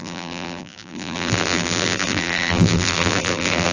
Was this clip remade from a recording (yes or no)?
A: yes